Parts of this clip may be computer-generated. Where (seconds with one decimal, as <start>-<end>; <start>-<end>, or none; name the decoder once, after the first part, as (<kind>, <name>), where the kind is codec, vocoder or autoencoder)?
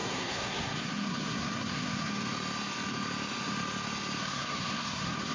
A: 0.0-2.1 (codec, SNAC); 4.2-5.3